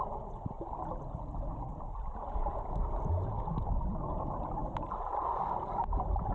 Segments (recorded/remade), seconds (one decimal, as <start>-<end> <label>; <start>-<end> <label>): 0.0-6.3 recorded

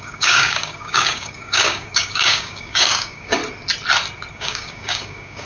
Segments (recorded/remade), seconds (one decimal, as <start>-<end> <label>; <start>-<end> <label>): 0.0-3.4 remade; 3.4-4.3 recorded; 4.3-5.5 remade

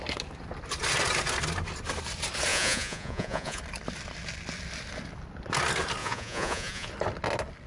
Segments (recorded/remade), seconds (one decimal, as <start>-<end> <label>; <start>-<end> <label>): 0.0-2.5 recorded; 2.5-3.6 remade; 3.6-6.0 recorded; 6.0-6.9 remade; 6.9-7.7 recorded

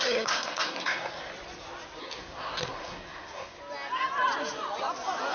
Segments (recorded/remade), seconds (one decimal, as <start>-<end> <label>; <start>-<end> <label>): 0.0-1.3 remade; 1.3-2.0 recorded; 2.0-3.6 remade; 3.6-5.3 recorded